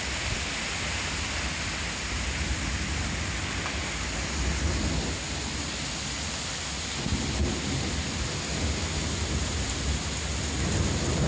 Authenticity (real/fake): real